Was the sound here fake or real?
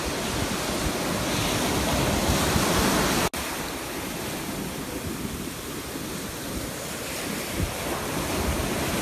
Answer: real